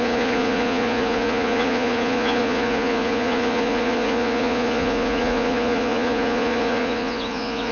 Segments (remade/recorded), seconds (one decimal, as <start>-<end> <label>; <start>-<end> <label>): 0.0-7.7 remade